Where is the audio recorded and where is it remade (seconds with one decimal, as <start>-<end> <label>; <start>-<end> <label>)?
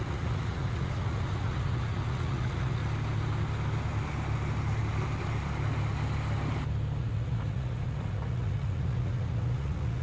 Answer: 0.0-2.8 remade; 2.8-7.0 recorded; 7.0-10.0 remade